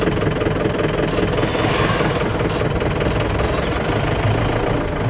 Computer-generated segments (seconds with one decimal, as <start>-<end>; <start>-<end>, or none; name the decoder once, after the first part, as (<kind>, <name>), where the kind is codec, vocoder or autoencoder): none